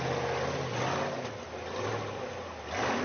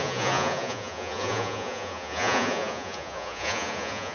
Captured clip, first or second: first